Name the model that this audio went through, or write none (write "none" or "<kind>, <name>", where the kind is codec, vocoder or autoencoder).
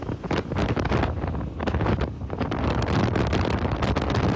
none